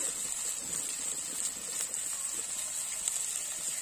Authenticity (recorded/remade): recorded